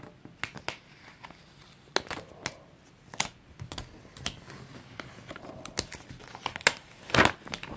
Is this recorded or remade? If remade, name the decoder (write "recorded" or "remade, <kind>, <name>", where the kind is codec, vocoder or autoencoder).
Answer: recorded